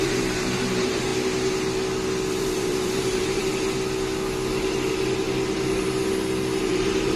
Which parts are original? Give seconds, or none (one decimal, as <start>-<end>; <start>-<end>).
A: 1.1-2.3; 3.5-6.7